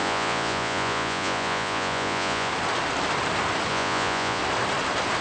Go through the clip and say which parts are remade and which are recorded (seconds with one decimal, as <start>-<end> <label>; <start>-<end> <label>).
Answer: 0.0-2.5 remade; 2.5-3.7 recorded; 3.7-4.4 remade; 4.4-5.2 recorded